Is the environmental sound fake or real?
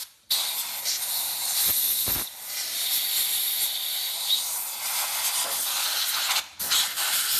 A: fake